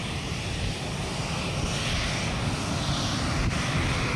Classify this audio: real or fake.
real